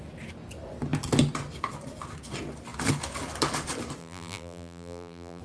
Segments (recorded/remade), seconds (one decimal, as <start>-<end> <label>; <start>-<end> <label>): 0.0-4.0 recorded; 4.0-5.4 remade